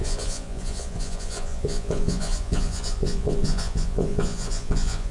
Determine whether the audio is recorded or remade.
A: remade